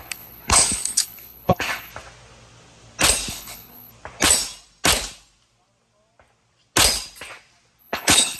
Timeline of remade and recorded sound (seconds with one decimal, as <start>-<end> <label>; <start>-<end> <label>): 0.0-1.9 remade; 1.9-3.3 recorded; 3.3-3.9 remade; 3.9-7.8 recorded; 7.8-8.4 remade